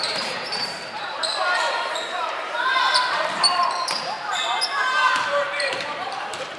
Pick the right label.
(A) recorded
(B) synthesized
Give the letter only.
B